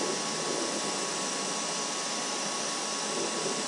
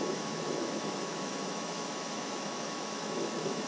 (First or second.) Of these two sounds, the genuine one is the first